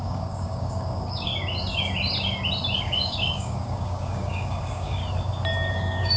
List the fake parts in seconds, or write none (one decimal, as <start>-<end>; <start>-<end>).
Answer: 0.0-1.3; 2.8-5.0; 5.7-6.2